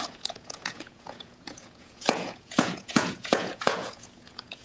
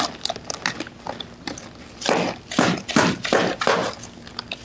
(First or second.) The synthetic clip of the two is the first